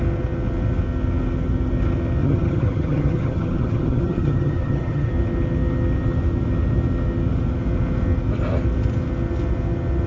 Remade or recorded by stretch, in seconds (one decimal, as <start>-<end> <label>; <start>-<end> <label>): 0.0-2.2 recorded; 2.2-5.1 remade; 5.1-10.1 recorded